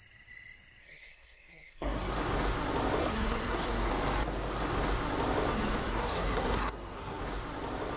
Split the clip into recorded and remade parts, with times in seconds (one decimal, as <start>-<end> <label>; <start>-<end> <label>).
0.0-0.8 recorded; 0.8-2.1 remade; 2.1-3.0 recorded; 3.0-3.9 remade; 3.9-5.9 recorded; 5.9-7.2 remade; 7.2-8.0 recorded